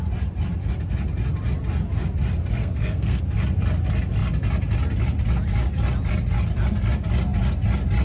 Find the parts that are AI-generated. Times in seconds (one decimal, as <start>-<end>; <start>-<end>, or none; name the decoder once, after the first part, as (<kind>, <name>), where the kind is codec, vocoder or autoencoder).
2.6-3.2 (codec, SNAC)